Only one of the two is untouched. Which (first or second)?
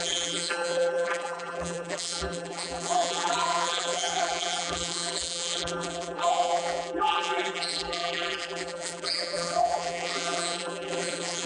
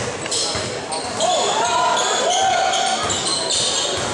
second